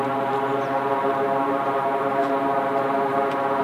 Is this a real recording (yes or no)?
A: yes